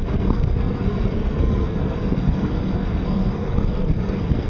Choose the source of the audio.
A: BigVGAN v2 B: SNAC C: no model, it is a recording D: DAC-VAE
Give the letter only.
B